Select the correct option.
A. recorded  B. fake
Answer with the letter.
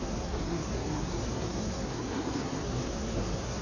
B